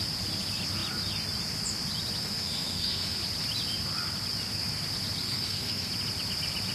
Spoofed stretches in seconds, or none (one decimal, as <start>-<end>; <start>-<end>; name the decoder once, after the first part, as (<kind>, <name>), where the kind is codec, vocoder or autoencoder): 2.2-3.2 (codec, SNAC); 5.2-5.9